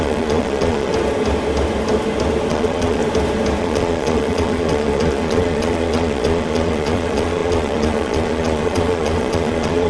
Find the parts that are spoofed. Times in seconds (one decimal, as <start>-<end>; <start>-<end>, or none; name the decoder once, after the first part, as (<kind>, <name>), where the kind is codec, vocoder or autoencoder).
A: 0.0-0.9 (vocoder, Vocos); 2.5-3.0; 3.6-9.9